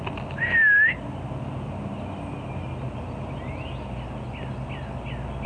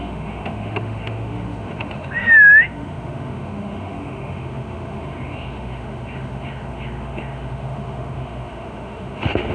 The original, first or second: first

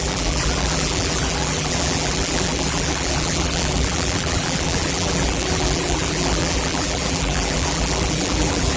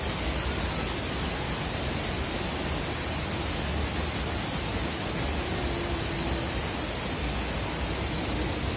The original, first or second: second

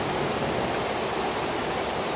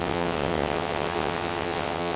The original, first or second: first